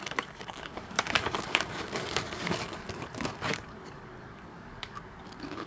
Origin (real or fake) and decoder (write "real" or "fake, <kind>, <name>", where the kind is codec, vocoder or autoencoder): fake, codec, DAC